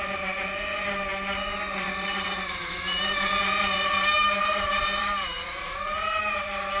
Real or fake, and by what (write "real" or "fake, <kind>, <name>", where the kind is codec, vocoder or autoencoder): fake, vocoder, BigVGAN v2